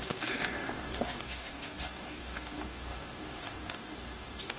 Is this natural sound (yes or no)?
no